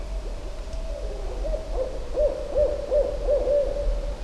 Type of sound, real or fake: real